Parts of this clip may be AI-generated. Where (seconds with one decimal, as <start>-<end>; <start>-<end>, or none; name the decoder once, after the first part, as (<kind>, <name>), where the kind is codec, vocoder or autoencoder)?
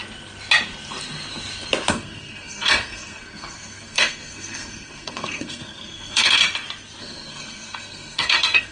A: 1.9-6.4 (codec, SNAC); 7.0-8.7